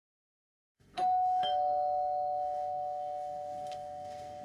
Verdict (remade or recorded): remade